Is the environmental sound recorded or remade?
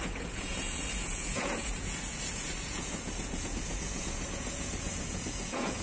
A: remade